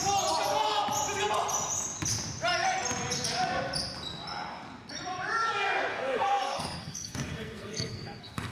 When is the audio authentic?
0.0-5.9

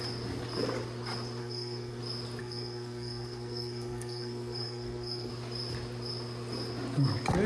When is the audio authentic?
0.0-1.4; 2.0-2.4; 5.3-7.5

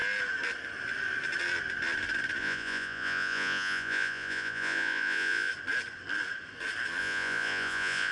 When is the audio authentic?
0.0-2.4; 5.5-7.0